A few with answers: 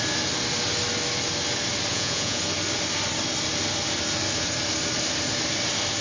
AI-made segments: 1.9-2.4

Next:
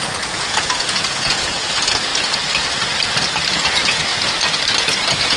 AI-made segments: 0.0-2.1; 3.5-4.1; 4.8-5.4

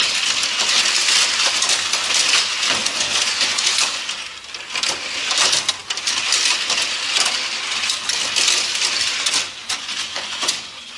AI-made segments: 2.8-4.0; 9.6-11.0

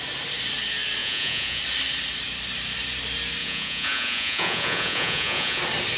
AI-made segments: 1.0-1.6; 3.4-5.6

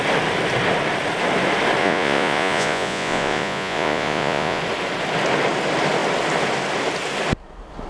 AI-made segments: 1.8-4.6

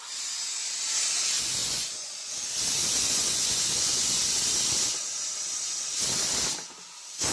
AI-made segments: 1.6-2.3; 3.0-4.2

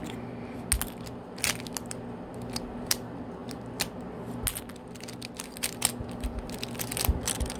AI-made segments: none

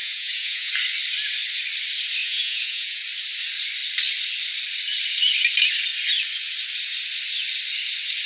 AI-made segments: 0.0-0.7; 2.2-3.0